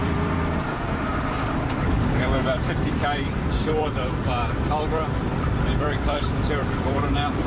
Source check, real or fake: fake